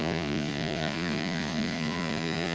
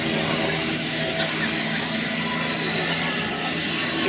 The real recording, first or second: second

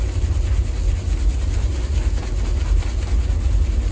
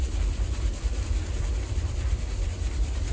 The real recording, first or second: first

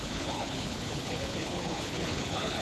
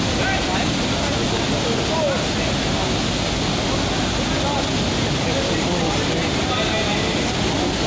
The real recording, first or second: second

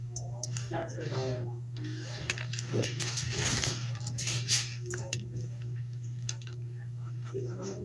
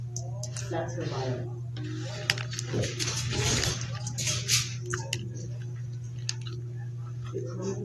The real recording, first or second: second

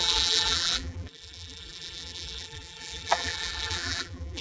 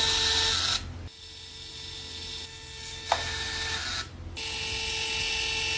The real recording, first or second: second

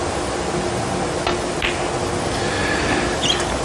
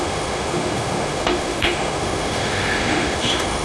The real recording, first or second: first